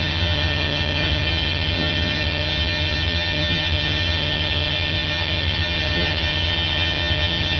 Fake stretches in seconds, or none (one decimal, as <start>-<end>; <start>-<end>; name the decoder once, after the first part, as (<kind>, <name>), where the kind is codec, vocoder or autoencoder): 0.0-7.6 (vocoder, HiFi-GAN)